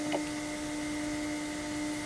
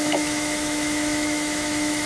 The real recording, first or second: first